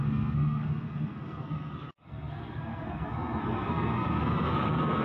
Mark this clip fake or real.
fake